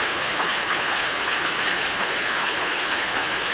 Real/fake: fake